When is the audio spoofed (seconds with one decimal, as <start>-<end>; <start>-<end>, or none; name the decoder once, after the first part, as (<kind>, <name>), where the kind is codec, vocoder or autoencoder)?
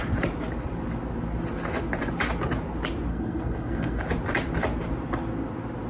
3.1-4.0 (codec, SNAC)